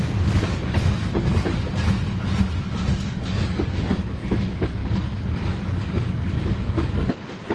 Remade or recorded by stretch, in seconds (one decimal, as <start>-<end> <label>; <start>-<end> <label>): 0.0-1.5 remade; 1.5-2.9 recorded; 2.9-7.5 remade